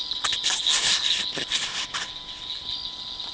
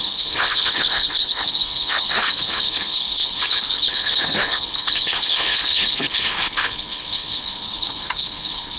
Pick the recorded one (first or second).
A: first